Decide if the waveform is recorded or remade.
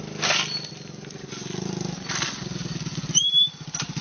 recorded